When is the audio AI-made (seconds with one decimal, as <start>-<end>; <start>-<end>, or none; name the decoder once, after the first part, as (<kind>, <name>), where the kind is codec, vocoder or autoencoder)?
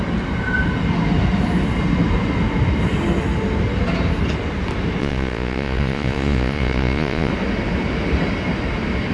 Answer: 5.0-7.3 (vocoder, Vocos)